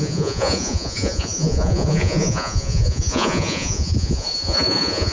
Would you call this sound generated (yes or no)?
yes